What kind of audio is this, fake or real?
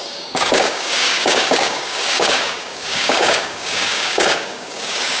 fake